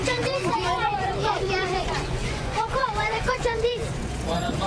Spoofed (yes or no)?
yes